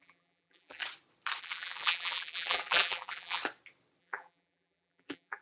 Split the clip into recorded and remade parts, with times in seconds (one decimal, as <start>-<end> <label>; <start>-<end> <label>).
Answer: 0.0-0.8 remade; 0.8-1.4 recorded; 1.4-3.4 remade; 3.4-4.0 recorded; 4.0-5.4 remade